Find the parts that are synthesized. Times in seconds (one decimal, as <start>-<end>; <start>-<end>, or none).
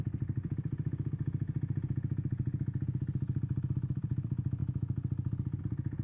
0.0-0.7; 4.0-4.6; 5.6-6.0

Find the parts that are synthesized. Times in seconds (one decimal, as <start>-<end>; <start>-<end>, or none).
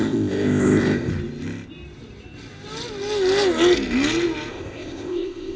0.0-1.1; 4.5-5.6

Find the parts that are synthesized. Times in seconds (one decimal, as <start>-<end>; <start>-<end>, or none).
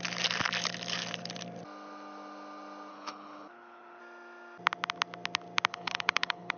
2.9-4.0; 5.7-6.6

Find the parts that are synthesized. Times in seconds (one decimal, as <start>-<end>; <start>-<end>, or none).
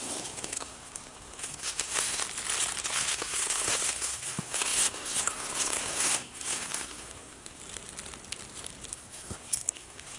0.0-2.2; 2.8-7.6; 8.9-10.2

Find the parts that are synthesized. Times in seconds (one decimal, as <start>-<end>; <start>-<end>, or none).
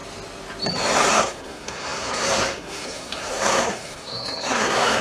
1.1-5.0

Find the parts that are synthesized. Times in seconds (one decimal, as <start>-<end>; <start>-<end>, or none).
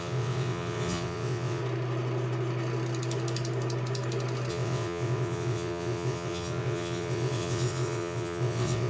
0.0-1.6; 4.5-8.9